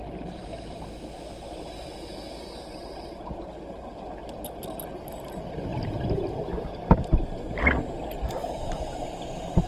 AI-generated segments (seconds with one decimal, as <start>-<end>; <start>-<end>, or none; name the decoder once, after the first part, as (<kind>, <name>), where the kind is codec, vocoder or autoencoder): 5.7-7.6 (vocoder, BigVGAN v2); 8.4-9.7